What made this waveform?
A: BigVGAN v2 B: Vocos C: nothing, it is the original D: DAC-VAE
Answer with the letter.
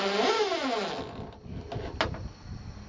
C